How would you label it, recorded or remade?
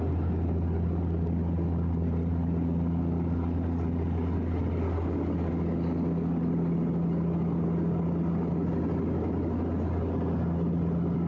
recorded